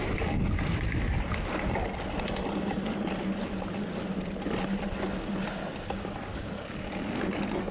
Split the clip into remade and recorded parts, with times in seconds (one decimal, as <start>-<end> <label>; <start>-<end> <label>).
0.0-6.3 recorded; 6.3-7.3 remade; 7.3-7.7 recorded